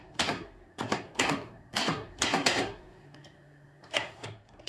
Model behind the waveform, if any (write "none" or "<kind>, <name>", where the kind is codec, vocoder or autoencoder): codec, SNAC